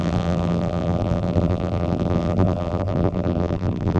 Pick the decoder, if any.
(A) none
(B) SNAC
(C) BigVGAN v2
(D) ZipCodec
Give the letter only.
C